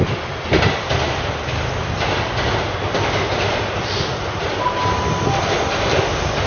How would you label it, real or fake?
real